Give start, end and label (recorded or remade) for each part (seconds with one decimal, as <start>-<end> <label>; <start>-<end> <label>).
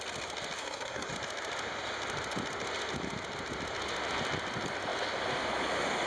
0.0-0.6 recorded; 0.6-1.1 remade; 1.1-6.1 recorded